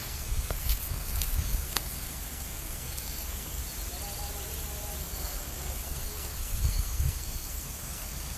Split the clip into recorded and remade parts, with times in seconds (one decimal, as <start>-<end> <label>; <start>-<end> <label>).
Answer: 0.0-3.6 remade; 3.6-5.0 recorded; 5.0-8.4 remade